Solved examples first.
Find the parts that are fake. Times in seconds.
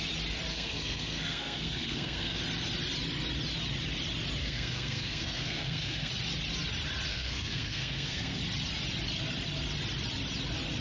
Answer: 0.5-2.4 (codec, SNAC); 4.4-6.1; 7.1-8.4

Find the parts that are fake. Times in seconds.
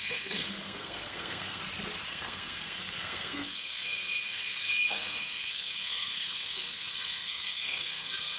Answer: 0.0-1.6 (codec, SNAC); 2.1-8.4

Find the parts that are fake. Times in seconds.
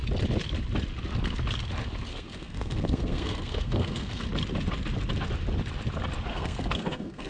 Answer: 2.1-4.2 (codec, SNAC); 6.3-7.3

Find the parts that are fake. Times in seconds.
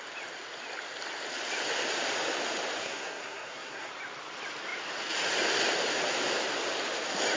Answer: 2.8-3.9 (codec, SNAC)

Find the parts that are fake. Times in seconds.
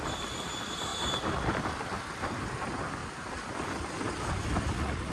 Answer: none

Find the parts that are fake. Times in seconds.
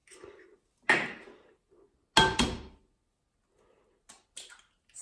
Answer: none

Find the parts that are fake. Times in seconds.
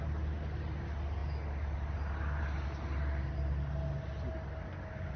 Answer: none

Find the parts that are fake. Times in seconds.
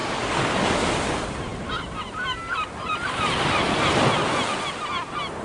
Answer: none